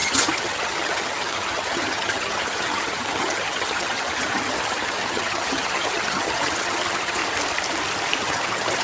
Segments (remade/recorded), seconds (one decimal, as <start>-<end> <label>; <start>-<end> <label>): 0.0-7.2 remade; 7.2-8.2 recorded; 8.2-8.8 remade